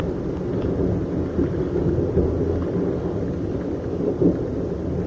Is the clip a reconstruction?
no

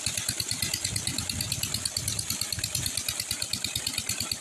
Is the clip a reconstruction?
no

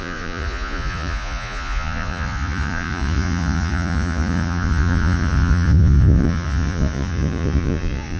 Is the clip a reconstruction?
yes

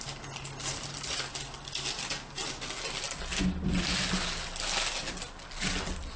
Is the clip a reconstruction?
no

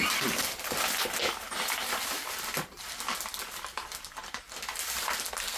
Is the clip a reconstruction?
no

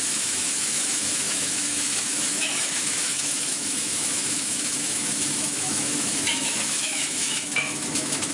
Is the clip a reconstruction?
yes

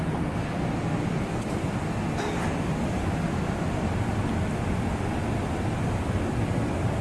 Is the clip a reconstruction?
no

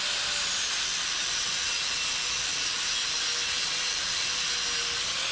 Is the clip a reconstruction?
no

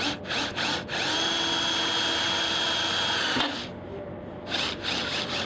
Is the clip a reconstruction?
no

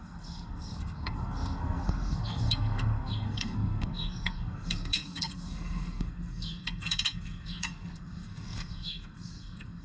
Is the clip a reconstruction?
yes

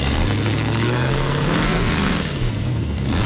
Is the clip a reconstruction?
yes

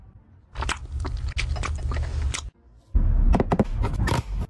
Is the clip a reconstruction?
no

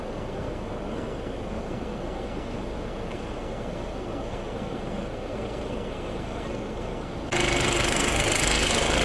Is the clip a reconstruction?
yes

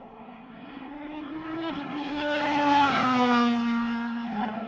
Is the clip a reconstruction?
yes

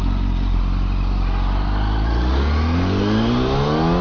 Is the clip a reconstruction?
no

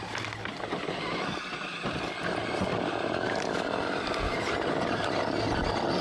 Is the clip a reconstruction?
no